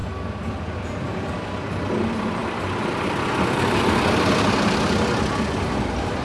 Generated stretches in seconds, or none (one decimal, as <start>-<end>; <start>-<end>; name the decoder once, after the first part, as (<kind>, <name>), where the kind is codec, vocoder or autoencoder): 0.8-6.2 (vocoder, BigVGAN v2)